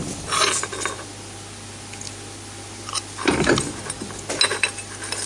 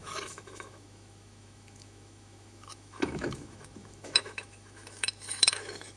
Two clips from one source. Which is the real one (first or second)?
first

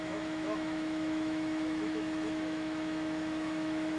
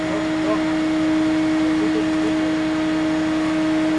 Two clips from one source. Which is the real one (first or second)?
second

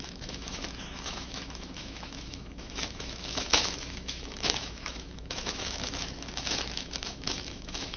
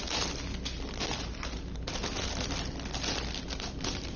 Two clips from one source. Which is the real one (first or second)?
second